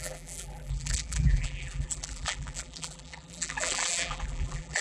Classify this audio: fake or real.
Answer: fake